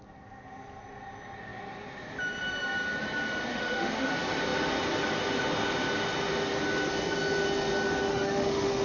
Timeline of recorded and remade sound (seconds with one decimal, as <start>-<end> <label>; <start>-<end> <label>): 0.0-3.5 recorded; 3.5-4.1 remade; 4.1-8.1 recorded; 8.1-8.8 remade